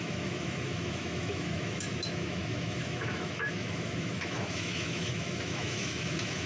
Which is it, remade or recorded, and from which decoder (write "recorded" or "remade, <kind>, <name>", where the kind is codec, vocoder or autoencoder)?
remade, autoencoder, DAC-VAE